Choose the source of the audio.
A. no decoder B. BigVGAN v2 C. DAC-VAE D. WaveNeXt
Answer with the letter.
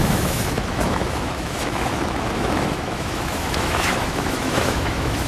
C